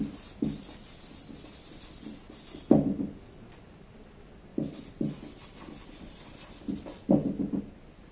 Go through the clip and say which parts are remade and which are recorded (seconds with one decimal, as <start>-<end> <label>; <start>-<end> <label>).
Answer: 0.0-8.1 recorded